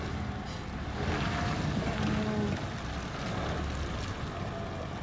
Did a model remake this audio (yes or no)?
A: no